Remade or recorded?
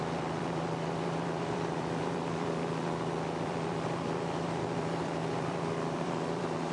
remade